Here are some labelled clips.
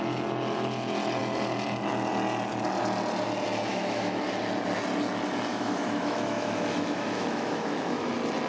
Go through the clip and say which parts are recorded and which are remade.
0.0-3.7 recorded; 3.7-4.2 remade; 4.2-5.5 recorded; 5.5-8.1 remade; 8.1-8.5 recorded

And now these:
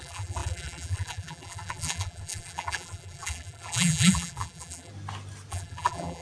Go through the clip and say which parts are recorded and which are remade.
0.0-4.9 remade; 4.9-5.5 recorded; 5.5-6.2 remade

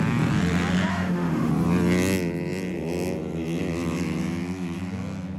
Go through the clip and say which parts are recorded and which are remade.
0.0-0.9 recorded; 0.9-1.5 remade; 1.5-5.4 recorded

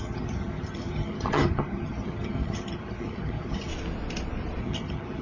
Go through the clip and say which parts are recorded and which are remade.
0.0-3.7 remade; 3.7-4.6 recorded; 4.6-5.2 remade

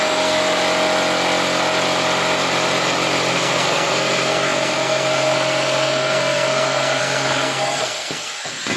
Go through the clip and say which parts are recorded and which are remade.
0.0-0.4 remade; 0.4-3.3 recorded; 3.3-8.8 remade

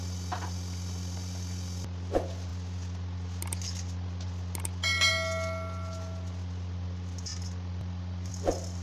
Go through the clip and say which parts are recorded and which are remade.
0.0-8.8 recorded

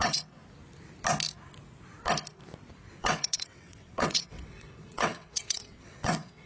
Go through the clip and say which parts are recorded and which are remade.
0.0-0.4 remade; 0.4-3.0 recorded; 3.0-6.5 remade